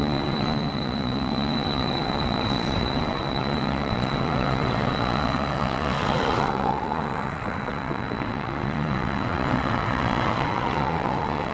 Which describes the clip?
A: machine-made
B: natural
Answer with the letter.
A